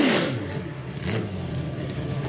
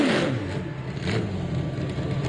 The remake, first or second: first